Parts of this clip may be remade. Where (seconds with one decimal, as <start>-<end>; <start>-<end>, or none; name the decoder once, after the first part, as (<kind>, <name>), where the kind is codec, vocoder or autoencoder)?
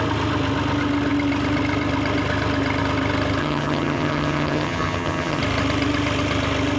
3.4-5.4 (vocoder, HiFi-GAN)